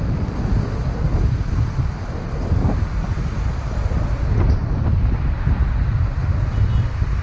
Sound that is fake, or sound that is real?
real